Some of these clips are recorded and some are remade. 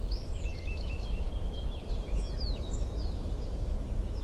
remade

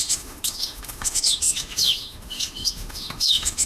remade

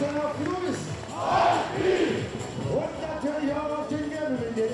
recorded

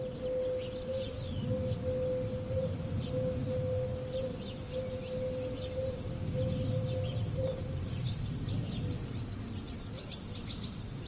recorded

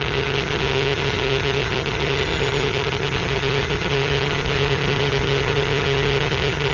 remade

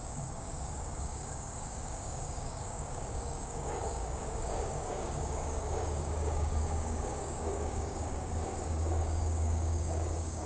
remade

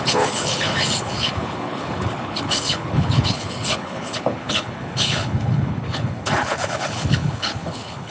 remade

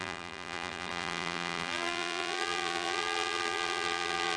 remade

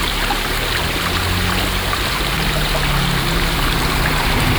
recorded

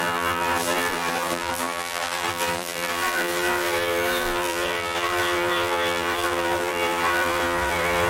remade